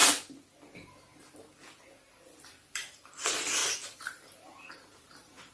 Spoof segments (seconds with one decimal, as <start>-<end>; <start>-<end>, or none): 2.4-5.5